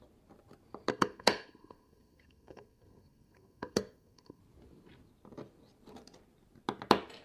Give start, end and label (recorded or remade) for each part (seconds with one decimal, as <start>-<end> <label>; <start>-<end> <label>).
0.0-0.9 recorded; 0.9-4.4 remade; 4.4-7.2 recorded